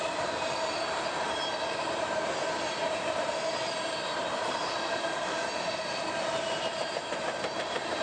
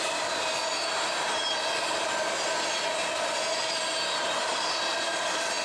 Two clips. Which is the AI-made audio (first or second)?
first